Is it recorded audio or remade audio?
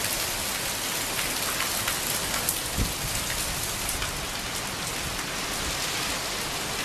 recorded